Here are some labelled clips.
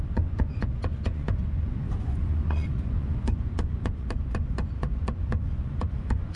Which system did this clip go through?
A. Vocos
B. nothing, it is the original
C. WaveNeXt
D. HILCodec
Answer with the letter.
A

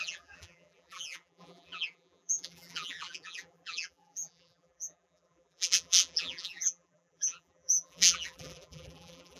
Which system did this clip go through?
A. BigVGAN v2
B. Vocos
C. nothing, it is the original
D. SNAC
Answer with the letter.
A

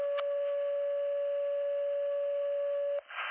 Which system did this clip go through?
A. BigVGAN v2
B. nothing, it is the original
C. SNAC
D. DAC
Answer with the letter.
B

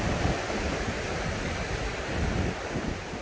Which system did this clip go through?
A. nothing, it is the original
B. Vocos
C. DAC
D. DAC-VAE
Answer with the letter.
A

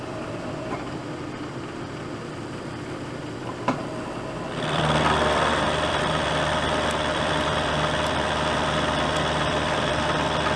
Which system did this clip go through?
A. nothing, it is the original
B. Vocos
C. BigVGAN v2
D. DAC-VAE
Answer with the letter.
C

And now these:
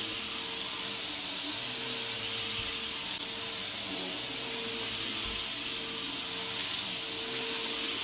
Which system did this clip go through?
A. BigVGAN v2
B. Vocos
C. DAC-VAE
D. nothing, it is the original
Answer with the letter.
D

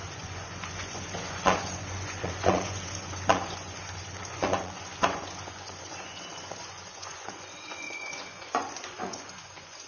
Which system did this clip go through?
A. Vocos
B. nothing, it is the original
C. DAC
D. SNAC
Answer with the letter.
A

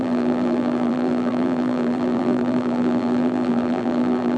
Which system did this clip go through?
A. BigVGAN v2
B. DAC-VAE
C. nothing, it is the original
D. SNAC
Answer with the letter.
A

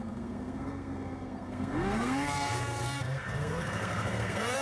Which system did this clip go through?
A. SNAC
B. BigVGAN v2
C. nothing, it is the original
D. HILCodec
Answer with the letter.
A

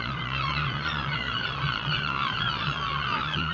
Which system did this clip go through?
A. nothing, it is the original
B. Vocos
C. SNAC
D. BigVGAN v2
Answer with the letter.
B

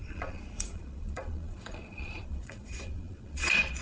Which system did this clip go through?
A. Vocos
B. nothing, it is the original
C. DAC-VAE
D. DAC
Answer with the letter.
A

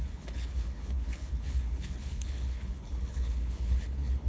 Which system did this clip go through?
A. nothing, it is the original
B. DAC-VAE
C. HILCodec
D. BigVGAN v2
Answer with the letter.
C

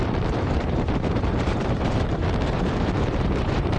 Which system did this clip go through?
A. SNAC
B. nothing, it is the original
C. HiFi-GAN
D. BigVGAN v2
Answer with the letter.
D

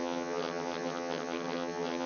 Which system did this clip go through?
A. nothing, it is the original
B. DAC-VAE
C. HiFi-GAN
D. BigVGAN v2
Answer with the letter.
C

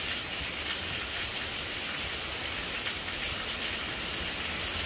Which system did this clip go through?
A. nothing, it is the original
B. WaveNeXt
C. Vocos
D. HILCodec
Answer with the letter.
A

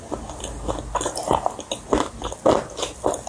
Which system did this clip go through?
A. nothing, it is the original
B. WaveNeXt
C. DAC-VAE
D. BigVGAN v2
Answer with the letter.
A